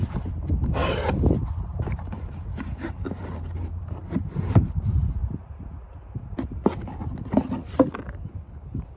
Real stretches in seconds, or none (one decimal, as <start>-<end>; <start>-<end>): 5.2-8.2